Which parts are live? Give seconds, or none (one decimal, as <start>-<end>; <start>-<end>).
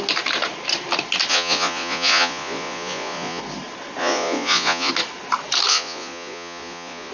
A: 0.0-1.3; 3.4-4.0; 4.9-5.7